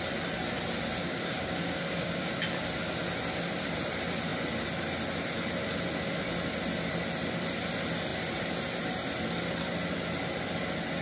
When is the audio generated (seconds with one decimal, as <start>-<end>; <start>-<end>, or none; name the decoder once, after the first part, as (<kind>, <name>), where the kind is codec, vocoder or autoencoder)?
1.0-2.3 (codec, DAC)